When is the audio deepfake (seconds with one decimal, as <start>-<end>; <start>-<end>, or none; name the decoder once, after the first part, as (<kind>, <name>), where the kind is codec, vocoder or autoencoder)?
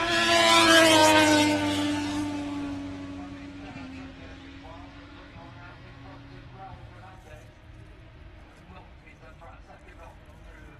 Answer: 4.9-7.1 (autoencoder, DAC-VAE)